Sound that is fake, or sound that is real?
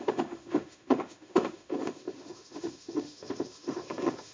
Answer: fake